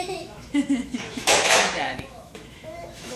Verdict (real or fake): fake